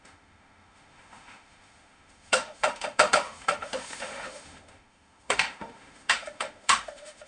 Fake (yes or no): yes